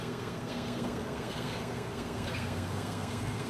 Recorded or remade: remade